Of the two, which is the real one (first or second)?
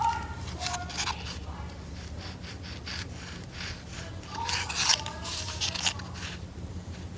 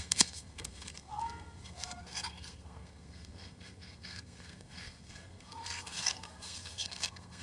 first